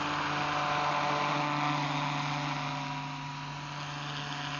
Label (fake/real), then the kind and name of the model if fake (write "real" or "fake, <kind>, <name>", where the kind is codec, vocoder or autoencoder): real